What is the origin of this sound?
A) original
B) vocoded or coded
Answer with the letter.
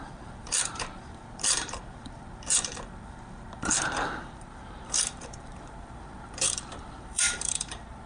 B